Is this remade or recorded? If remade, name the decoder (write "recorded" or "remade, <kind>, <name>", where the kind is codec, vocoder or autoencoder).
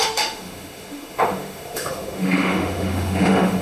remade, autoencoder, DAC-VAE